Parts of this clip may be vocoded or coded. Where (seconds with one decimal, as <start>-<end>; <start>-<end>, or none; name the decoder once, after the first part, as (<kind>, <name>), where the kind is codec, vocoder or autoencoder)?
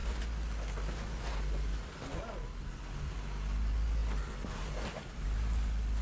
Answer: none